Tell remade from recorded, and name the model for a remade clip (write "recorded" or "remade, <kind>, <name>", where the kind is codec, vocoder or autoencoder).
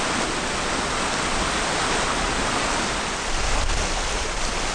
recorded